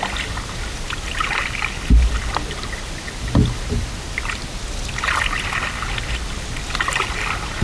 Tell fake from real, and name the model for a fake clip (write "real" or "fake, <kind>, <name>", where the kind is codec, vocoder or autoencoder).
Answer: real